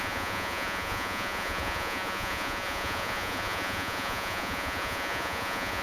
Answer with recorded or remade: remade